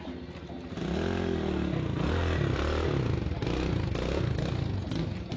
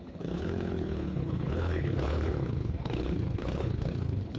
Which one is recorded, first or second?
first